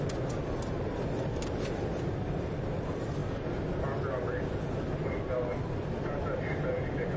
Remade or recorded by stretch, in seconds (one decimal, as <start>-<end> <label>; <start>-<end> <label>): 0.0-7.2 recorded